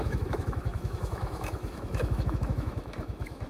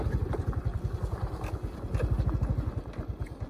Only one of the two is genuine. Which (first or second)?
second